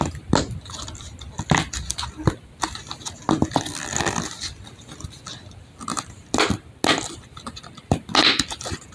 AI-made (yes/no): no